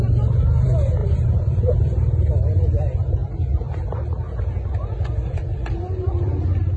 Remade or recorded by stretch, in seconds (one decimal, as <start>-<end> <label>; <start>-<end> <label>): 0.0-1.0 recorded; 1.0-2.3 remade; 2.3-3.2 recorded; 3.2-4.4 remade; 4.4-6.8 recorded